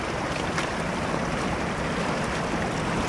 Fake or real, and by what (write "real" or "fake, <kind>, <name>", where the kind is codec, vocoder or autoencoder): real